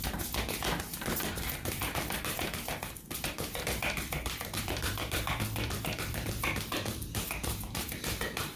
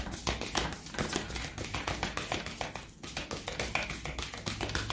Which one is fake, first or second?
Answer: first